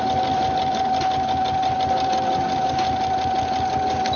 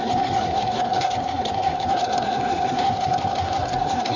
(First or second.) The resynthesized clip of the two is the second